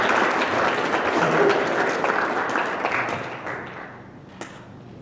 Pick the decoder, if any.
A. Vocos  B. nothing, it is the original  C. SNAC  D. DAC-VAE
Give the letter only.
B